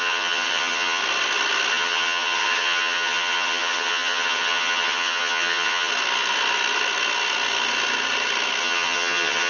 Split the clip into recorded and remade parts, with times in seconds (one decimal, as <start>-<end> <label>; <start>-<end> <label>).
0.0-1.0 remade; 1.0-1.7 recorded; 1.7-5.9 remade; 5.9-8.6 recorded; 8.6-9.5 remade